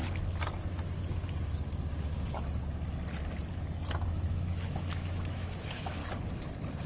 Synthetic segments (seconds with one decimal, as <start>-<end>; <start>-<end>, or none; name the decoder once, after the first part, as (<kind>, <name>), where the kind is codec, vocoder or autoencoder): 4.1-6.0 (autoencoder, DAC-VAE)